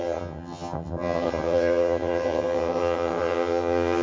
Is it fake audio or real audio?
fake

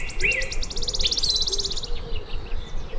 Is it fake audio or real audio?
real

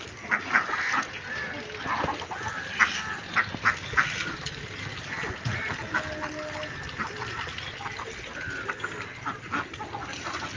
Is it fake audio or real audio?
real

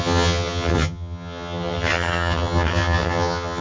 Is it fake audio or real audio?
fake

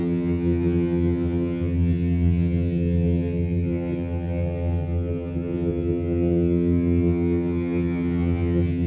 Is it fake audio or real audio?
fake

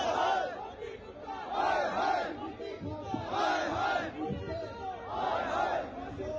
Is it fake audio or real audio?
real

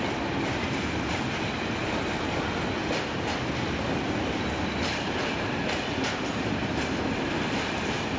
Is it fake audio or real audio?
real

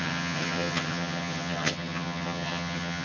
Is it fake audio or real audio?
fake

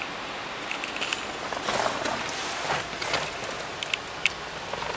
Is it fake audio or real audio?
real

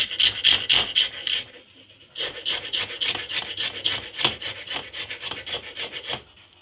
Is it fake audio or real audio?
real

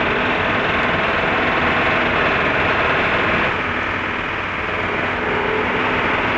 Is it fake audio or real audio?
real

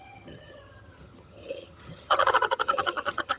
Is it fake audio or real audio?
fake